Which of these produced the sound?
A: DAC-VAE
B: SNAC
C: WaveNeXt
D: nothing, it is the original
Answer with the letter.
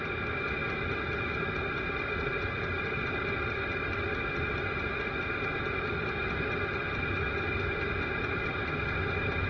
D